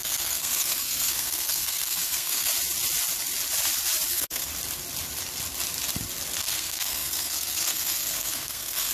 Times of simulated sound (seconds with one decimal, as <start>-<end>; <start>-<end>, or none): 0.0-2.5; 4.1-4.5; 6.4-8.9